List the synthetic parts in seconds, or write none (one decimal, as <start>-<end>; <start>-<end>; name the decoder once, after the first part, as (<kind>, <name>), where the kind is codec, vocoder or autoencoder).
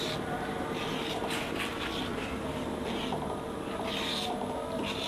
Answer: none